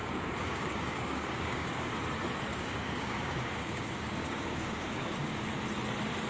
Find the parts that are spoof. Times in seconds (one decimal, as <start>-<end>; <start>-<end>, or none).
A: 0.0-1.9; 2.5-5.5